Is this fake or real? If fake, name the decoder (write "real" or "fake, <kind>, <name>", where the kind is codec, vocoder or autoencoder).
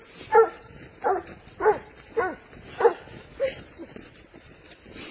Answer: real